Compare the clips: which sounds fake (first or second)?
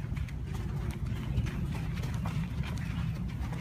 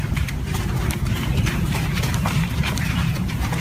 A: second